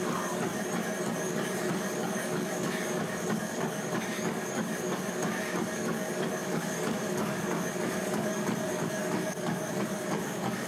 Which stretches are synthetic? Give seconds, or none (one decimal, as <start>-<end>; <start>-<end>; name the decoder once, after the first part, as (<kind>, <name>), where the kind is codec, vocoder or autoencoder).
0.0-0.5 (codec, DAC); 1.1-10.7